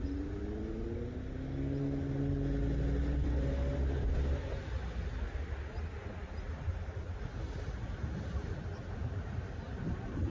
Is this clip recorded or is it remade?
recorded